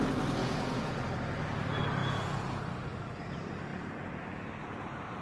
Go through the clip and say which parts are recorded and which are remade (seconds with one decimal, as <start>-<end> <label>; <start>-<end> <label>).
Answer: 0.0-0.4 recorded; 0.4-1.1 remade; 1.1-2.0 recorded; 2.0-2.6 remade; 2.6-5.2 recorded